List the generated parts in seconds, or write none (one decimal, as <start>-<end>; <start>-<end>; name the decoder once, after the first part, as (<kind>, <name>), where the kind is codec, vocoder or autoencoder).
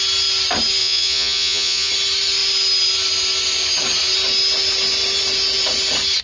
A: 0.8-1.9 (vocoder, Vocos)